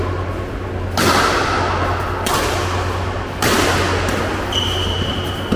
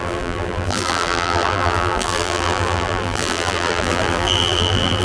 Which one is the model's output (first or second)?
second